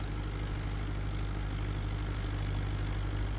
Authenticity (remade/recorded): recorded